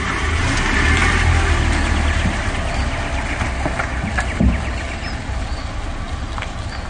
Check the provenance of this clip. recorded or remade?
recorded